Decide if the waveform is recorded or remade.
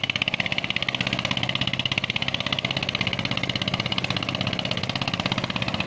recorded